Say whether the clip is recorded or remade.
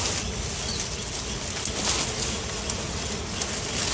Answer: recorded